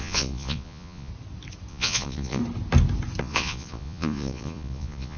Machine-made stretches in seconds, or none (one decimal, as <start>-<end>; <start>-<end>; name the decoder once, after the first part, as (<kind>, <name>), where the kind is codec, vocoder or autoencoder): 0.0-1.1 (vocoder, Vocos); 1.7-2.4; 3.2-5.2